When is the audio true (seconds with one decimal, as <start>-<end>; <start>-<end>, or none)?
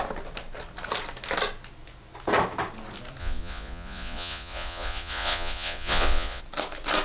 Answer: 0.0-3.2; 6.4-7.0